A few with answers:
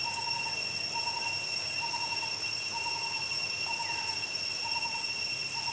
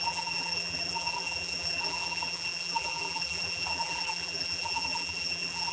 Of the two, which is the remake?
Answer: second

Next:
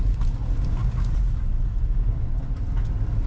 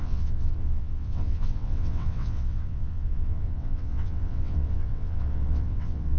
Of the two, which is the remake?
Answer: second